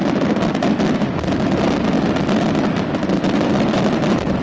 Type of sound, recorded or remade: recorded